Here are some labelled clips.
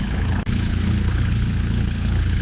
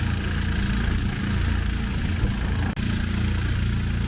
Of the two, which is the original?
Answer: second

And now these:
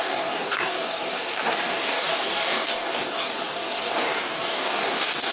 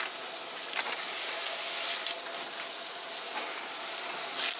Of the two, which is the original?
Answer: second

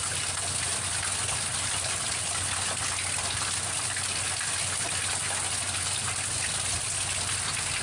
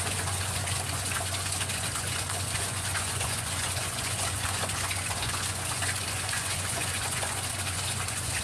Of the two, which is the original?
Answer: first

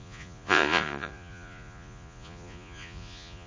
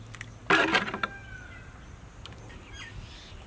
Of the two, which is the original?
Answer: second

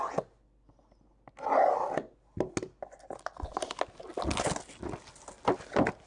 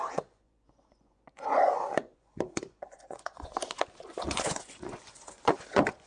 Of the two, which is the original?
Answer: first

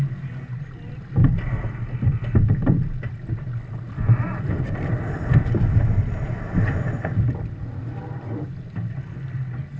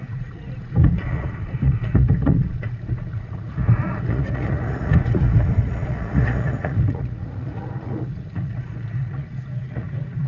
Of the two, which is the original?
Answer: first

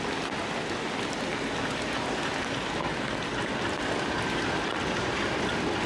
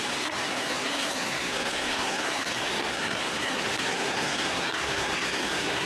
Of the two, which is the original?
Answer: first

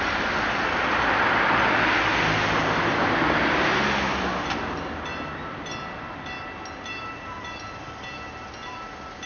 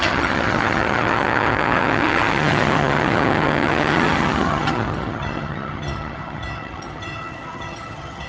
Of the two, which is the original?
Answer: first